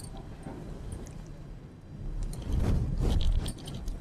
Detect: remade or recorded recorded